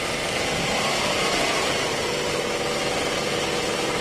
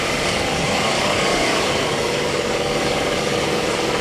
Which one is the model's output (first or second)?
second